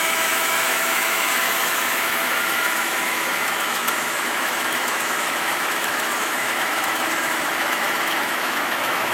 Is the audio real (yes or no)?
no